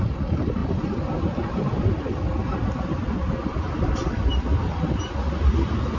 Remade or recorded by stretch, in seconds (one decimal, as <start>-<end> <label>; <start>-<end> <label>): 0.0-0.6 recorded; 0.6-2.9 remade; 2.9-6.0 recorded